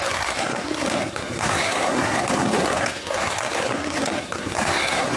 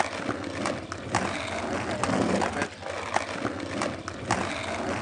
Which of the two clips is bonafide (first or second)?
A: second